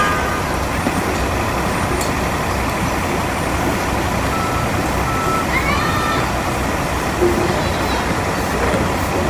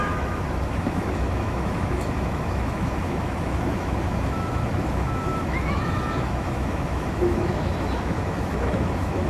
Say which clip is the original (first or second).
first